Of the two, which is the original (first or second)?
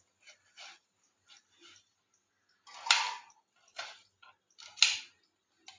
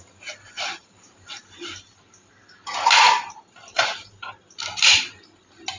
first